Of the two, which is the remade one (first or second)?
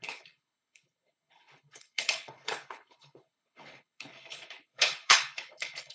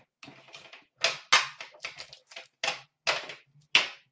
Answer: first